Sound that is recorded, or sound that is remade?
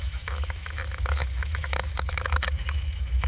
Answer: remade